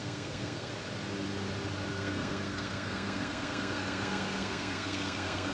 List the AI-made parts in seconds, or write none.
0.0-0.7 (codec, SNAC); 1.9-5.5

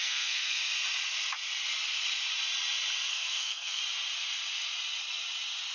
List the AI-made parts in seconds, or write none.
0.0-0.6 (codec, SNAC); 3.1-3.8

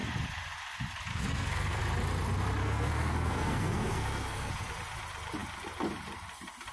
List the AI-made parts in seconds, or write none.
1.1-1.8 (codec, SNAC); 2.6-4.5

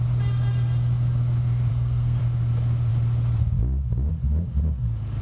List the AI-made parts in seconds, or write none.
1.7-2.2 (codec, SNAC)

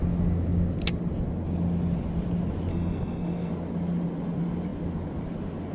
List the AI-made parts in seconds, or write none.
2.7-3.5 (codec, SNAC)

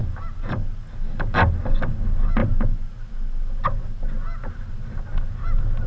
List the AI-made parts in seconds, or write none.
none

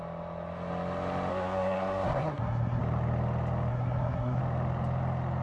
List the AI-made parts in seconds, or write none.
1.3-2.8 (codec, SNAC); 3.7-4.4

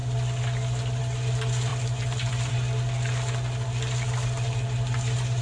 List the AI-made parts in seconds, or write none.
none